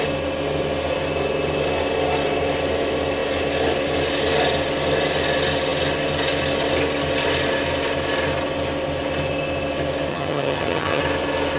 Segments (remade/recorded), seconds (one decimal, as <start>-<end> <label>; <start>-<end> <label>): 0.0-10.1 recorded; 10.1-11.0 remade; 11.0-11.6 recorded